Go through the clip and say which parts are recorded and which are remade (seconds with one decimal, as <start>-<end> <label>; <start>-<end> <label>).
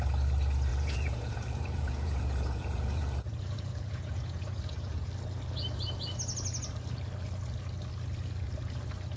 0.0-0.7 recorded; 0.7-5.1 remade; 5.1-9.2 recorded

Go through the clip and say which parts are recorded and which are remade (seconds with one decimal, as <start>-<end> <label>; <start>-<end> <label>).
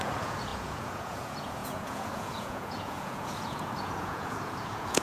0.0-5.0 remade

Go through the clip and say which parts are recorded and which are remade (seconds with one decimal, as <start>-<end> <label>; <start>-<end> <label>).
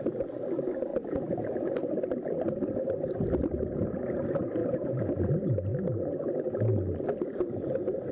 0.0-0.9 recorded; 0.9-1.6 remade; 1.6-4.6 recorded; 4.6-5.3 remade; 5.3-8.1 recorded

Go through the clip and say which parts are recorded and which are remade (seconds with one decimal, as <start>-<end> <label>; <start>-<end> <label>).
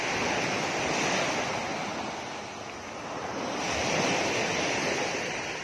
0.0-4.5 recorded; 4.5-5.6 remade